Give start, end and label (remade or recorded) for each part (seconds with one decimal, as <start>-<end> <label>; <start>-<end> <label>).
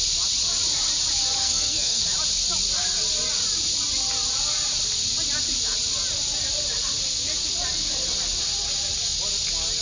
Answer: 0.0-1.4 recorded; 1.4-2.0 remade; 2.0-9.8 recorded